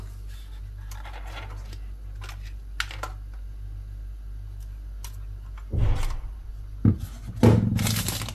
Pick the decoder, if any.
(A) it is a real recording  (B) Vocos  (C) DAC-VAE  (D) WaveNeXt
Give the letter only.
A